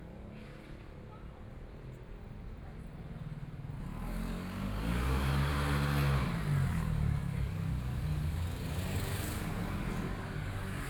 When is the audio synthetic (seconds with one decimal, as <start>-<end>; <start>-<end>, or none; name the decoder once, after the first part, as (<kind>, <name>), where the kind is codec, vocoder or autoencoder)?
0.0-0.5 (codec, DAC); 3.8-5.5; 6.7-10.9